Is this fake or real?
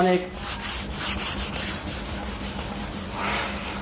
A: real